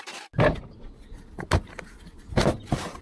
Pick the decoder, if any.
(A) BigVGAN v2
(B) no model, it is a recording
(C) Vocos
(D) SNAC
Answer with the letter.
B